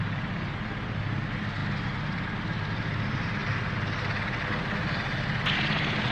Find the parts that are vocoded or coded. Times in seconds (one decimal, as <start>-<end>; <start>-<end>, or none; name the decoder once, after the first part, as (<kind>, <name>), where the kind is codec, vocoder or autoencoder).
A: none